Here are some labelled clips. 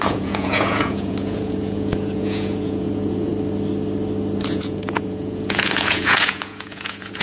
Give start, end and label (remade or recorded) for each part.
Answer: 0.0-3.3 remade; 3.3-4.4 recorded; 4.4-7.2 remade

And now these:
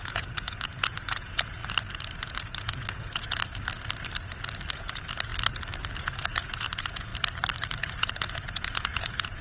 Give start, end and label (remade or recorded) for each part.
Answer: 0.0-1.6 remade; 1.6-2.2 recorded; 2.2-3.4 remade; 3.4-4.7 recorded; 4.7-5.3 remade; 5.3-6.0 recorded; 6.0-7.1 remade; 7.1-7.8 recorded; 7.8-9.4 remade

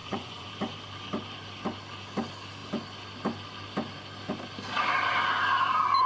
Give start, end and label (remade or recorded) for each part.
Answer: 0.0-0.5 remade; 0.5-6.1 recorded

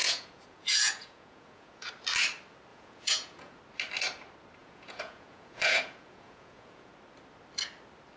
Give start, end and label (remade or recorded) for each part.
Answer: 0.0-1.9 remade; 1.9-2.7 recorded; 2.7-3.6 remade; 3.6-4.6 recorded; 4.6-6.9 remade; 6.9-8.2 recorded

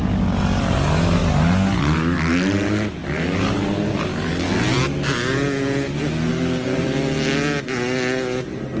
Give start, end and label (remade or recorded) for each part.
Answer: 0.0-8.8 recorded

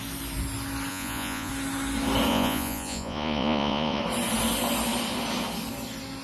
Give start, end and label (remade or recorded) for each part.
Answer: 0.0-0.9 recorded; 0.9-1.5 remade; 1.5-2.3 recorded; 2.3-4.0 remade; 4.0-6.2 recorded

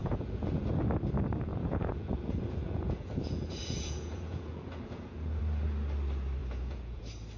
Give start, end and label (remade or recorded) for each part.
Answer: 0.0-0.8 remade; 0.8-1.5 recorded; 1.5-5.4 remade; 5.4-6.4 recorded; 6.4-7.0 remade; 7.0-7.4 recorded

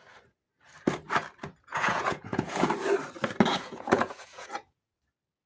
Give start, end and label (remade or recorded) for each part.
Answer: 0.0-1.7 recorded; 1.7-2.7 remade; 2.7-3.5 recorded; 3.5-5.0 remade; 5.0-5.5 recorded